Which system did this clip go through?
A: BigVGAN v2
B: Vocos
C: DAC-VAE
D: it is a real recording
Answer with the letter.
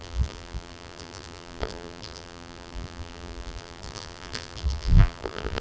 A